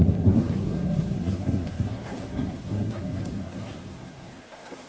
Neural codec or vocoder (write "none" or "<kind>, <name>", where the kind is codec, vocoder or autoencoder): codec, SNAC